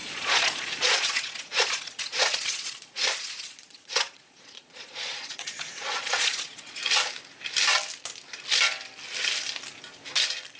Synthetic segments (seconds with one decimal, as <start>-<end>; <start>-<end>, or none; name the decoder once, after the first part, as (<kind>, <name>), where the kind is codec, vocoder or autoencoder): 0.0-6.8 (vocoder, Vocos)